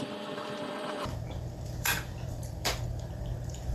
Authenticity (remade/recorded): remade